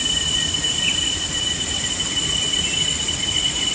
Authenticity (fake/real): real